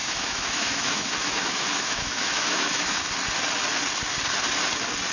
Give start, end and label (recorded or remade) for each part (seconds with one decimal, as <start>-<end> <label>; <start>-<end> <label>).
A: 0.0-3.1 remade; 3.1-5.1 recorded